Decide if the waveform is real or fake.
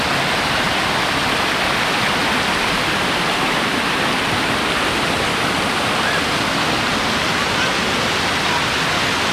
real